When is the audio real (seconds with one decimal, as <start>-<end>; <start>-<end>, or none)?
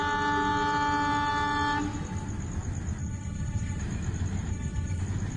0.0-3.0; 3.8-4.5; 5.0-5.4